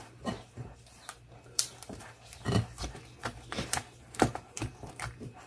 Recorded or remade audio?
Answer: remade